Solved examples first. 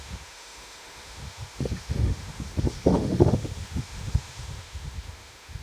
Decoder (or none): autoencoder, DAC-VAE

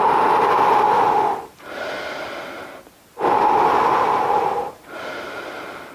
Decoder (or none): none